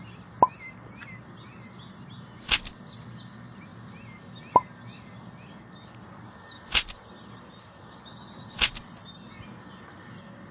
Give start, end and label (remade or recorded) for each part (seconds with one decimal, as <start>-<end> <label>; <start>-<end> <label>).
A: 0.0-10.5 recorded